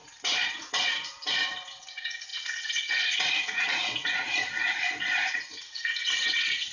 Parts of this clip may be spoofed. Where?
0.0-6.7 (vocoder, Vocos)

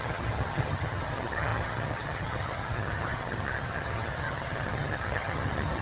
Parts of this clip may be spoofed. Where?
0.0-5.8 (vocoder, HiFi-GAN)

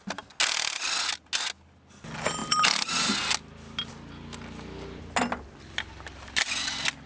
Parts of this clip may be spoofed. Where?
none